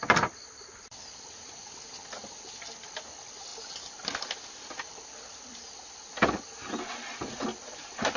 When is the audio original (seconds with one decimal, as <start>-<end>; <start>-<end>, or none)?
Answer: 0.0-8.2